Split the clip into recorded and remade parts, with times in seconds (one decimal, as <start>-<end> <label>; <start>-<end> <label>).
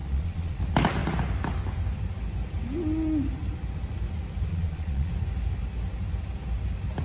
0.0-0.6 remade; 0.6-4.5 recorded; 4.5-5.1 remade; 5.1-7.0 recorded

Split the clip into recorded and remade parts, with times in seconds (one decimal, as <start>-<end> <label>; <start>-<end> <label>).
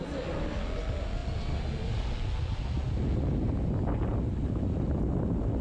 0.0-5.6 recorded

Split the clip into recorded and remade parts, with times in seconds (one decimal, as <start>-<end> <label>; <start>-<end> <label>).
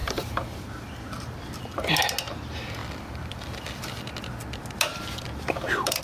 0.0-2.0 remade; 2.0-2.8 recorded; 2.8-4.0 remade; 4.0-4.9 recorded; 4.9-6.0 remade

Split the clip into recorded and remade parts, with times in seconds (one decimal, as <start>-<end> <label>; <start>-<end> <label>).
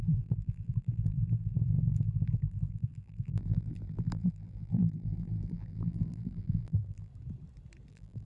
0.0-7.1 remade; 7.1-7.9 recorded; 7.9-8.3 remade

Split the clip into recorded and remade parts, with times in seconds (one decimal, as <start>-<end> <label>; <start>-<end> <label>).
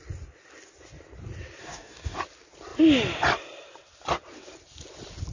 0.0-1.6 recorded; 1.6-2.2 remade; 2.2-5.3 recorded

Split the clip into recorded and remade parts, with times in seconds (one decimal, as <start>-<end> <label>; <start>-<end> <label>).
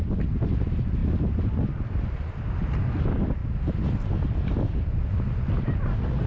0.0-6.3 recorded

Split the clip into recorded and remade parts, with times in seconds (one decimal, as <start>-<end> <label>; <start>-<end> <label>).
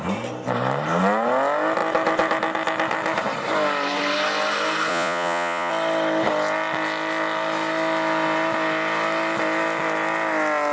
0.0-4.9 recorded; 4.9-5.7 remade; 5.7-10.7 recorded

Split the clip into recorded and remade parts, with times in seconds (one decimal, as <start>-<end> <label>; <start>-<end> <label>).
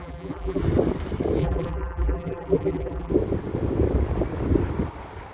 0.0-0.6 remade; 0.6-1.4 recorded; 1.4-3.1 remade; 3.1-5.3 recorded